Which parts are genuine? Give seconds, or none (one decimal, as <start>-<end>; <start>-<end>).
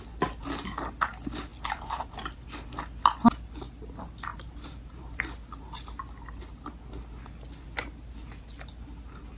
0.0-1.5; 2.1-4.3; 5.2-9.4